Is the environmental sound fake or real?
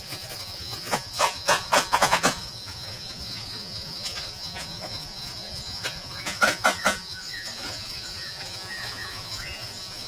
fake